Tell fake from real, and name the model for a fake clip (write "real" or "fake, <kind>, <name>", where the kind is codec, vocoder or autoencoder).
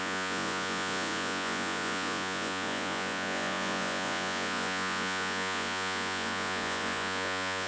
fake, vocoder, Vocos